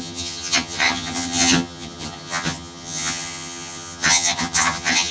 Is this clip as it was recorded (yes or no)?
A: no